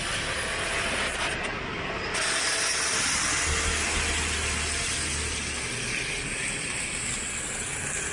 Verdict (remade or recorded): recorded